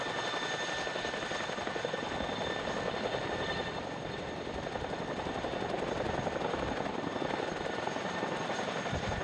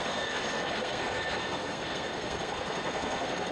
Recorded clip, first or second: first